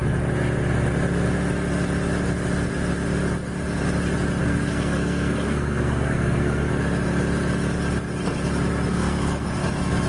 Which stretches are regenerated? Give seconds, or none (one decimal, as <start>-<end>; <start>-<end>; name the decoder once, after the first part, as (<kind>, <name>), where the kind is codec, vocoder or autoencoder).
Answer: 4.4-6.7 (codec, SNAC); 8.9-9.5